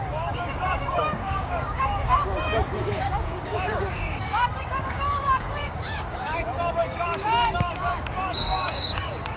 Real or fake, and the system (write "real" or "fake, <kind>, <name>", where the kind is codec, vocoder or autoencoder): fake, codec, DAC